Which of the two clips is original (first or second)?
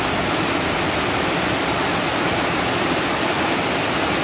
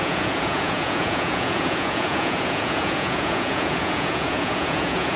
first